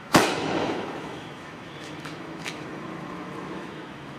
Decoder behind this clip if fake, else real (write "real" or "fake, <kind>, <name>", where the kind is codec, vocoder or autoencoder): fake, autoencoder, DAC-VAE